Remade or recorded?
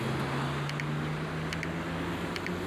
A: recorded